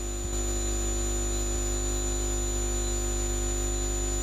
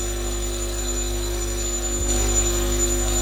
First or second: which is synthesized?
second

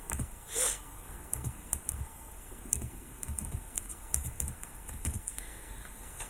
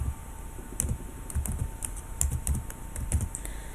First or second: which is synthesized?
first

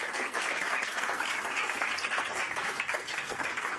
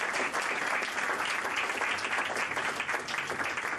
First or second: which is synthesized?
first